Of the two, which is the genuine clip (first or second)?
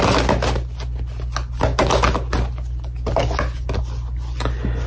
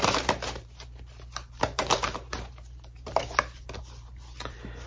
first